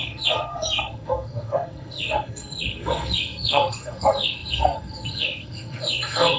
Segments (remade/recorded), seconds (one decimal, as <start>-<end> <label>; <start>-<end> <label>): 0.0-6.4 remade